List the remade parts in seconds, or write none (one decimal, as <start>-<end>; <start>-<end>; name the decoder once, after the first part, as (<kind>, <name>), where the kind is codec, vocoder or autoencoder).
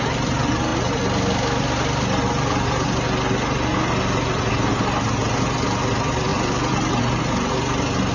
6.3-7.0 (vocoder, BigVGAN v2)